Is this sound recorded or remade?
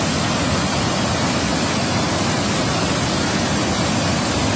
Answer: recorded